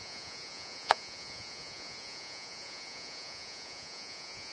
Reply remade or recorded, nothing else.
remade